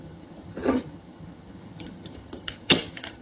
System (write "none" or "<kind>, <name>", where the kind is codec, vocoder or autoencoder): vocoder, HiFi-GAN